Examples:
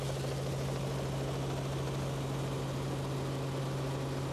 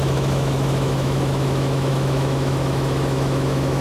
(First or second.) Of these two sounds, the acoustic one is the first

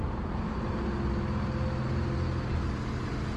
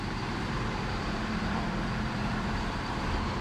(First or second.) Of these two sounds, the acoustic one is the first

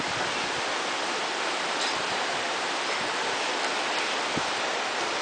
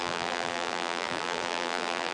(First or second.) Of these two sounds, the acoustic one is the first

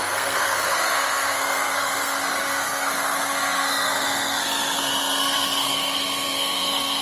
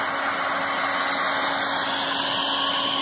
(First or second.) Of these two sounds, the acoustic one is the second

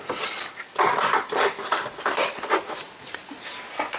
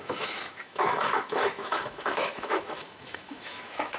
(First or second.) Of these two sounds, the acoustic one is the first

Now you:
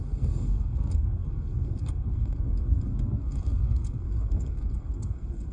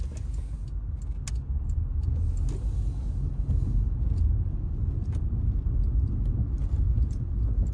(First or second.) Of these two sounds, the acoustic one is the second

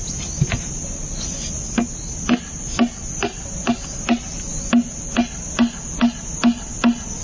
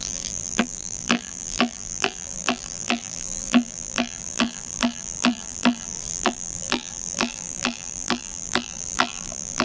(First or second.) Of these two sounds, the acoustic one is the first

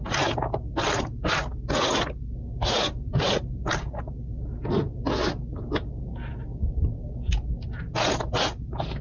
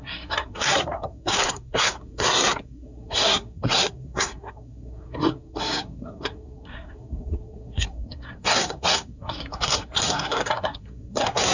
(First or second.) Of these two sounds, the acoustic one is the first